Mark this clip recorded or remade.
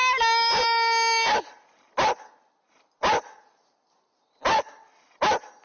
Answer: recorded